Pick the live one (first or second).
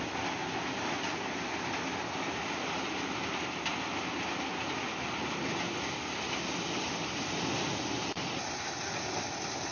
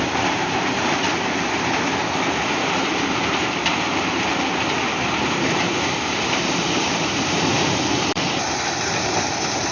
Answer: first